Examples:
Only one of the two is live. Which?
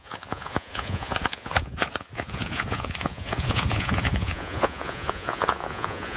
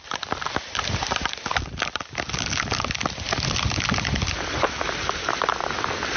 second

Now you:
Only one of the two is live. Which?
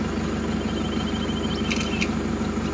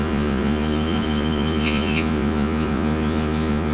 first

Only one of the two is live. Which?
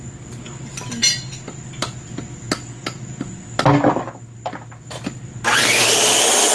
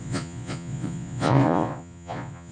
first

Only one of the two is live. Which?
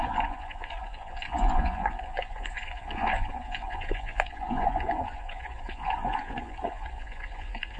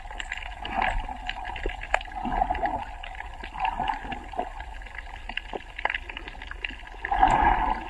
second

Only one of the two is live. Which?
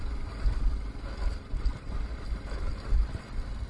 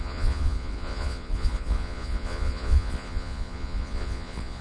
first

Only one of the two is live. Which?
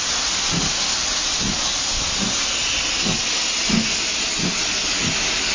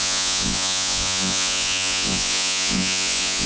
first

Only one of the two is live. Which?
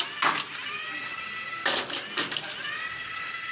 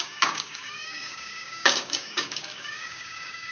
first